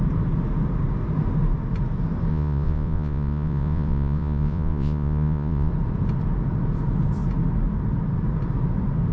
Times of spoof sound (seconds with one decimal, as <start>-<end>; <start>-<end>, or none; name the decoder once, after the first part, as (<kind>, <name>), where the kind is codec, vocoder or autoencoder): 2.3-5.7 (vocoder, Vocos)

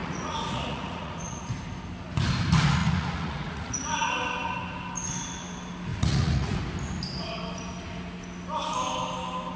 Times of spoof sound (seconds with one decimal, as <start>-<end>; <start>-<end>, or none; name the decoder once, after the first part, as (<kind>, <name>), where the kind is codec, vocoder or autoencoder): 0.0-1.5 (vocoder, Vocos); 2.8-4.1; 5.9-6.6

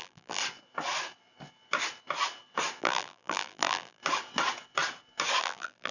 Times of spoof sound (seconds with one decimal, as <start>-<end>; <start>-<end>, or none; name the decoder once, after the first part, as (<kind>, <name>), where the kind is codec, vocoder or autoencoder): 0.0-0.4 (vocoder, BigVGAN v2); 2.8-4.0; 5.4-5.9

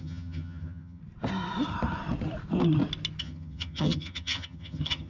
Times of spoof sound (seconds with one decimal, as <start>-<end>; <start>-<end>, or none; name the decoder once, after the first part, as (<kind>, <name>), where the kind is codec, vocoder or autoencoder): 0.0-1.0 (vocoder, HiFi-GAN); 3.2-5.1

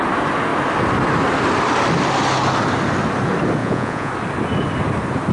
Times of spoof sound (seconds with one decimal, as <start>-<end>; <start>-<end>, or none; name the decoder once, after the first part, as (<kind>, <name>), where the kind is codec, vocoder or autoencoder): 3.6-4.1 (vocoder, Vocos)

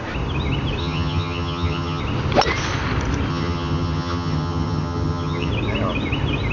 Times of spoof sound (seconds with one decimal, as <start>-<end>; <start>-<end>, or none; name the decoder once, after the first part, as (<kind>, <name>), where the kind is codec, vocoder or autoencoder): 0.8-2.0 (vocoder, HiFi-GAN); 3.3-5.5